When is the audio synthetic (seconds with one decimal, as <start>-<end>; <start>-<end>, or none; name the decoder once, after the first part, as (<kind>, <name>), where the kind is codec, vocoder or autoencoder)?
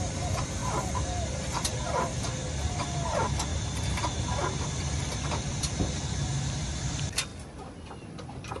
0.0-8.6 (vocoder, BigVGAN v2)